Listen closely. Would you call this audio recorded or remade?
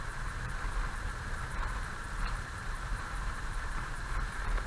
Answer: remade